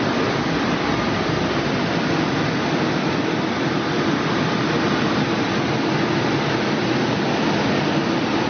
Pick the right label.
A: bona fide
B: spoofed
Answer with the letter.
A